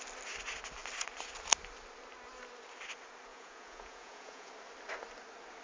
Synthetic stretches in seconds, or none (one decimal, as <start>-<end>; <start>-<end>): 3.3-4.5